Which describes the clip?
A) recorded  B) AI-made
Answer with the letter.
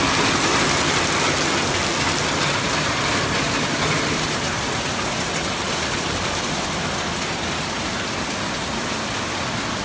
A